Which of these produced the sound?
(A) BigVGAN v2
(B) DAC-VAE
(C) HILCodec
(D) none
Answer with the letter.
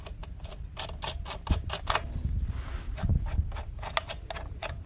D